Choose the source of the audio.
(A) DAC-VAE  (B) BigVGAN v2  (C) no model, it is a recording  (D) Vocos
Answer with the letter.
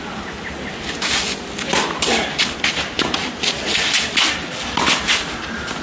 C